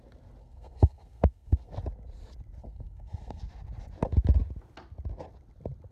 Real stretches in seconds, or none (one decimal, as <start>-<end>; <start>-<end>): 0.0-0.4; 1.7-2.6; 3.4-5.9